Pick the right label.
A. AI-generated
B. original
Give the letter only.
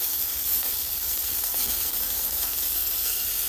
A